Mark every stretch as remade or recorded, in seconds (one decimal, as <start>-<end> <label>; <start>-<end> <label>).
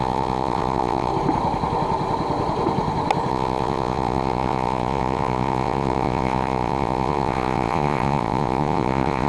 0.0-1.1 remade; 1.1-3.3 recorded; 3.3-9.3 remade